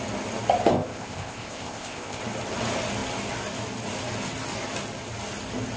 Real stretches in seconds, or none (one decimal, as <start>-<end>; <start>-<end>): 0.0-0.7; 2.2-5.8